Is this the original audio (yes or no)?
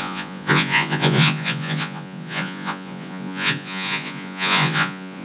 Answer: no